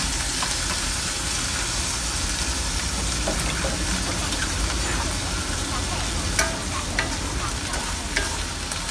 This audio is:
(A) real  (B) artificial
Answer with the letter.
A